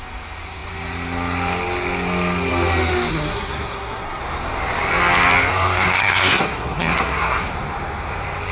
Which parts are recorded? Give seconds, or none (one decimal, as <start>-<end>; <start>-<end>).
0.0-3.1; 4.2-5.5; 7.4-8.5